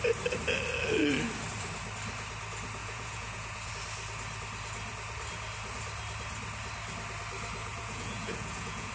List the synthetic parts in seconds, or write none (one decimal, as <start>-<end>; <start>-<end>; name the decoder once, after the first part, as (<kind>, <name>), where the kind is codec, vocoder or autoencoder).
2.8-3.7 (vocoder, Vocos); 7.6-8.9